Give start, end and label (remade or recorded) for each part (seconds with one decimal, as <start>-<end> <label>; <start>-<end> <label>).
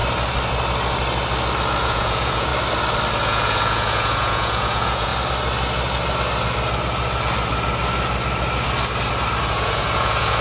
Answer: 0.0-1.8 recorded; 1.8-2.5 remade; 2.5-3.2 recorded; 3.2-5.1 remade; 5.1-9.5 recorded; 9.5-10.4 remade